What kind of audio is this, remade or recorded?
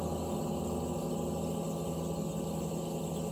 recorded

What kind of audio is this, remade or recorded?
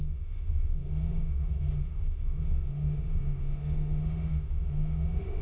remade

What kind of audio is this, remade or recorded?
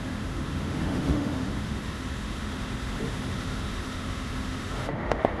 remade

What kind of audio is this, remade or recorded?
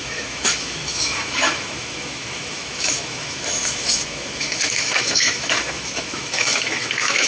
remade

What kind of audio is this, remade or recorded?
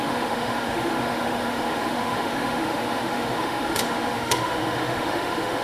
remade